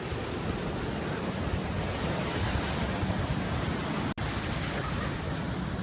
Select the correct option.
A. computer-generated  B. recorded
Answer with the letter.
B